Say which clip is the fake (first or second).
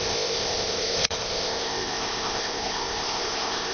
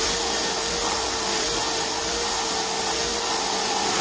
first